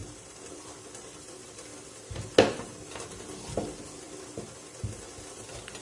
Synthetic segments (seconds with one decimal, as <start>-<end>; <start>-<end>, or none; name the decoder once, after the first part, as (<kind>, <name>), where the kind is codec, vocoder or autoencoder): 0.0-1.2 (vocoder, BigVGAN v2)